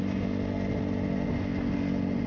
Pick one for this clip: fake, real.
real